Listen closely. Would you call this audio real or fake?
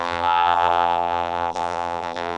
fake